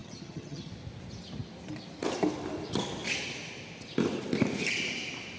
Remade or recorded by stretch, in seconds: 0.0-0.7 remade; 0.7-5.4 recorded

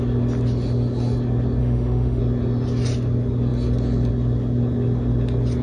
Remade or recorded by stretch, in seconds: 0.0-1.6 recorded; 1.6-2.2 remade; 2.2-5.6 recorded

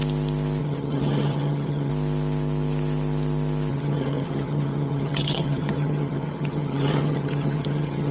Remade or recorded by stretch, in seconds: 0.0-0.6 recorded; 0.6-1.9 remade; 1.9-3.7 recorded; 3.7-8.1 remade